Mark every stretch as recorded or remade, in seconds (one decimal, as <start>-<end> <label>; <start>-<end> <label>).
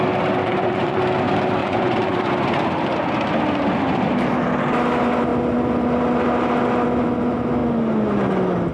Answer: 0.0-0.4 recorded; 0.4-1.0 remade; 1.0-1.6 recorded; 1.6-2.3 remade; 2.3-8.7 recorded